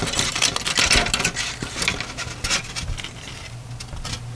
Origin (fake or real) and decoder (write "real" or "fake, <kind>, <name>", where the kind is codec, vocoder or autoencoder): real